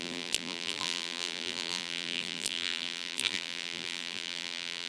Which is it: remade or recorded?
remade